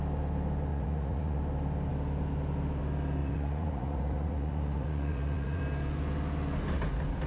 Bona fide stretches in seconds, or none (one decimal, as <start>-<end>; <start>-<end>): 0.0-0.7; 1.4-3.2; 5.6-7.3